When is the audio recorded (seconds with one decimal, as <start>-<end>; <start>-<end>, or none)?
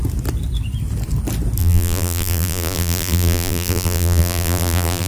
0.0-1.6